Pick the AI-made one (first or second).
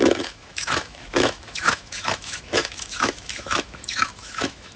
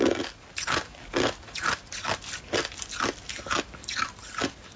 first